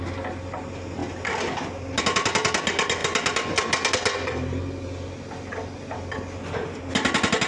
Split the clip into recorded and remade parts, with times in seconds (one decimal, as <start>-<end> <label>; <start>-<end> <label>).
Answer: 0.0-7.5 recorded